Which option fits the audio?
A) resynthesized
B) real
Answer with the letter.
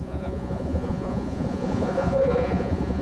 A